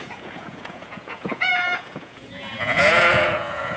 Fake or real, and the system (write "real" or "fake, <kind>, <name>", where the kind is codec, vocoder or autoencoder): fake, vocoder, Vocos